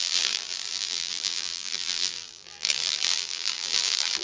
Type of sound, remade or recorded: remade